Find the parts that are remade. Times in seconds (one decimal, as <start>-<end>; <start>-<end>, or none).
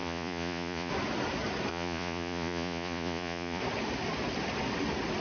0.0-0.9; 1.7-3.6